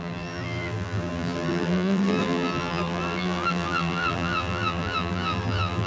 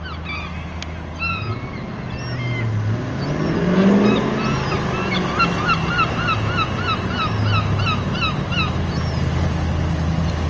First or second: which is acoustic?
second